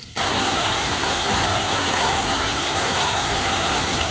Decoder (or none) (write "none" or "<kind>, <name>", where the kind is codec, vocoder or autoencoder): codec, SNAC